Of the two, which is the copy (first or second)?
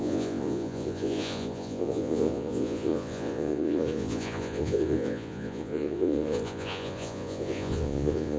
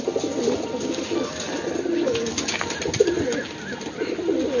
first